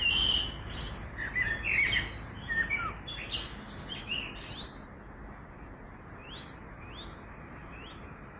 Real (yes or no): yes